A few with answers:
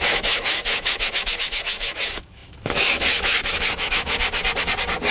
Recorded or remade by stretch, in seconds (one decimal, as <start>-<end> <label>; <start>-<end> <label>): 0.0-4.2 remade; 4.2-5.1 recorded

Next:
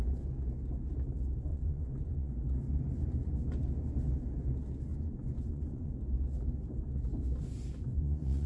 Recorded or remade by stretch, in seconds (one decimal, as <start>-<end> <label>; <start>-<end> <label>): 0.0-1.5 recorded; 1.5-2.3 remade; 2.3-4.9 recorded; 4.9-5.9 remade; 5.9-7.9 recorded; 7.9-8.5 remade

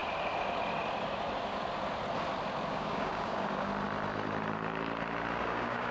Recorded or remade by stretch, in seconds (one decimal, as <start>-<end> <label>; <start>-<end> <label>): 0.0-2.7 recorded; 2.7-3.7 remade; 3.7-5.4 recorded; 5.4-5.9 remade

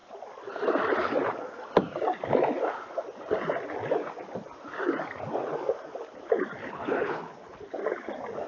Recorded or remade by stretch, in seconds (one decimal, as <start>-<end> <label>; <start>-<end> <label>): 0.0-6.6 recorded; 6.6-7.7 remade; 7.7-8.5 recorded